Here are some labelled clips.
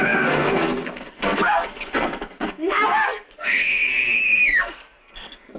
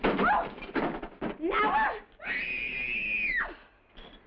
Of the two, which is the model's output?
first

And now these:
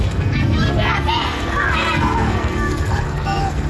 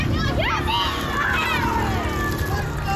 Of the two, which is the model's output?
first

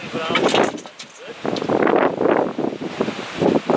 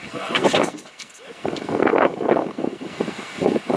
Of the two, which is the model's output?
second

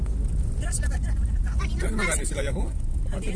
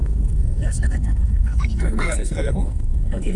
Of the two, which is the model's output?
second